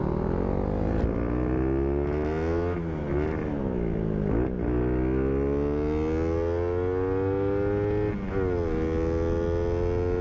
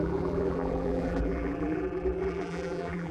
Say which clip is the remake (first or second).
second